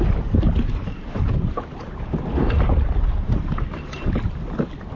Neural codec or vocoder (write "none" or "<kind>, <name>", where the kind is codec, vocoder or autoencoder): none